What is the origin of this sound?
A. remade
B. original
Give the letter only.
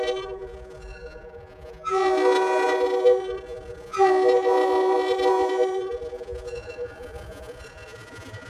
A